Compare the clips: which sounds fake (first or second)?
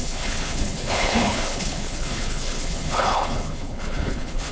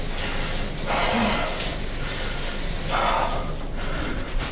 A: first